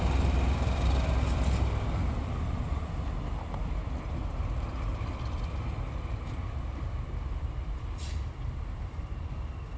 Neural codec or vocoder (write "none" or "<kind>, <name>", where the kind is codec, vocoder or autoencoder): vocoder, BigVGAN v2